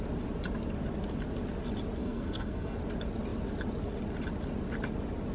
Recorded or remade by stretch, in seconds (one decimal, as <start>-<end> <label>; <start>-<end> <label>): 0.0-2.0 recorded; 2.0-2.8 remade; 2.8-5.3 recorded